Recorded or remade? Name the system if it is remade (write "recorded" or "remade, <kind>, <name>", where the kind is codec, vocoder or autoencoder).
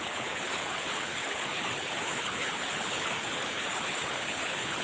remade, codec, HILCodec